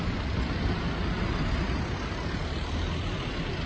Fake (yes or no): no